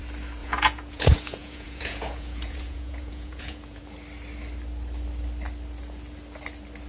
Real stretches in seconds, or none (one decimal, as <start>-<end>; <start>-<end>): 0.0-0.4; 3.8-6.9